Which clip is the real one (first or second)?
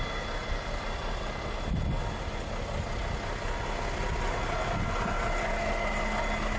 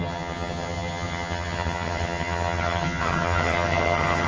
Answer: first